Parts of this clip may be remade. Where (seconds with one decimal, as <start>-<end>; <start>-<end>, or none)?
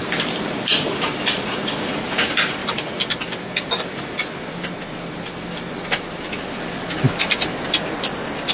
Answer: 0.7-2.6; 7.7-8.5